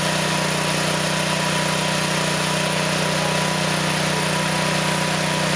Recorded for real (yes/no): yes